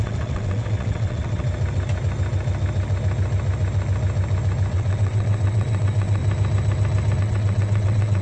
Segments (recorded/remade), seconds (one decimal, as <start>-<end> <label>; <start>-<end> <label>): 0.0-1.4 remade; 1.4-4.7 recorded; 4.7-6.2 remade; 6.2-7.2 recorded; 7.2-8.2 remade